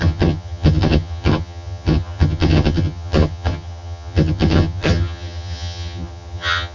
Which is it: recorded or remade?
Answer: remade